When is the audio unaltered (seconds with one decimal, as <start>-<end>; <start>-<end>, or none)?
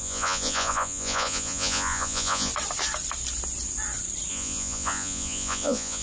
2.5-4.3